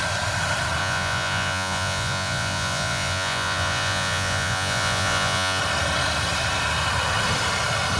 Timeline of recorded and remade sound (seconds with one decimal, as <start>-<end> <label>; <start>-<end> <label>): 0.0-0.8 recorded; 0.8-5.6 remade; 5.6-8.0 recorded